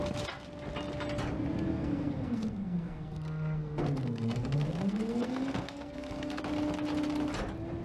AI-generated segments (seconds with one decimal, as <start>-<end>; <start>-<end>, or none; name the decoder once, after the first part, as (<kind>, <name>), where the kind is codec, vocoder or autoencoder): 1.7-6.4 (codec, SNAC)